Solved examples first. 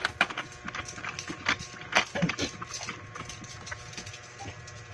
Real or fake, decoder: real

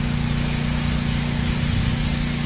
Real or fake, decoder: real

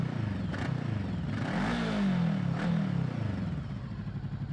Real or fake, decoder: real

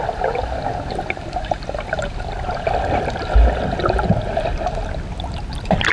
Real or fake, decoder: real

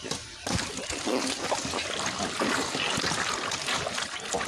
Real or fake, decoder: real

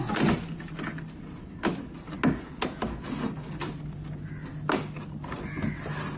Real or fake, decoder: real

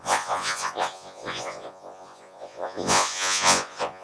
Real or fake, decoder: fake, vocoder, Vocos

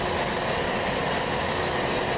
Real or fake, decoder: real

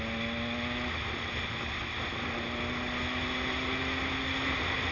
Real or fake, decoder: real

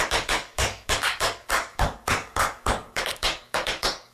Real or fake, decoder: fake, codec, DAC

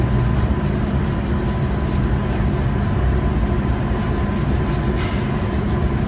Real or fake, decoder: real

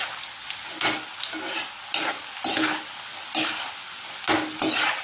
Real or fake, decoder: real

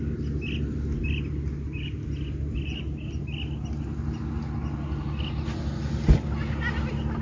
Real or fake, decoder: real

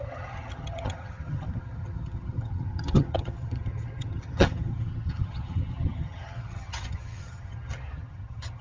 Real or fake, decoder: fake, vocoder, HiFi-GAN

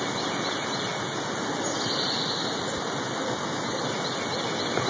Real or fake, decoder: real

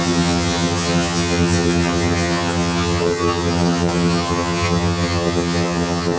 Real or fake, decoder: fake, vocoder, HiFi-GAN